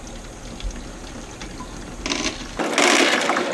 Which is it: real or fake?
real